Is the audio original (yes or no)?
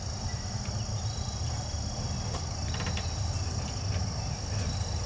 yes